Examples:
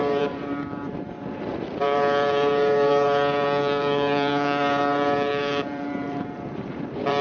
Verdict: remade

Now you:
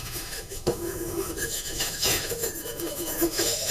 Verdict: remade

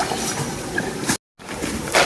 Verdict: recorded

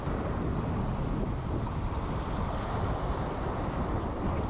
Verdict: remade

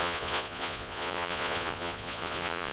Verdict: remade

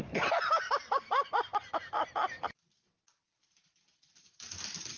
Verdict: recorded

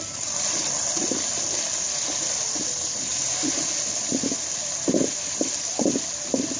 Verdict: recorded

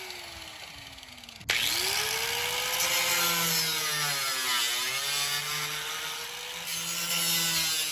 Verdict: recorded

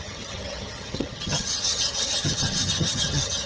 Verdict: remade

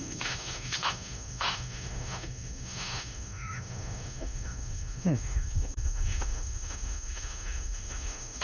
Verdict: remade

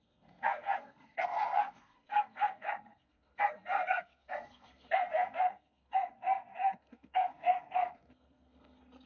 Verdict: remade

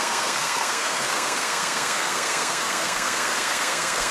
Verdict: remade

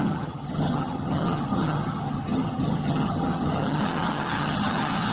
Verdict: remade